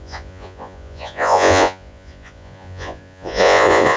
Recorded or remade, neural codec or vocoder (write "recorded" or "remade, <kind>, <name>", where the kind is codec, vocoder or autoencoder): remade, vocoder, Vocos